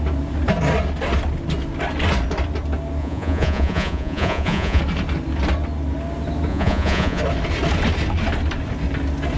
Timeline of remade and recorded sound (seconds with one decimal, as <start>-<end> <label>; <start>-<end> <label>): 0.0-3.0 recorded; 3.0-4.8 remade; 4.8-6.5 recorded; 6.5-7.2 remade; 7.2-9.4 recorded